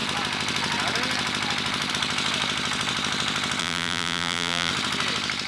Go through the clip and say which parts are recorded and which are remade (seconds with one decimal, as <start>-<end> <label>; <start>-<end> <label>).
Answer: 0.0-3.6 recorded; 3.6-4.7 remade; 4.7-5.5 recorded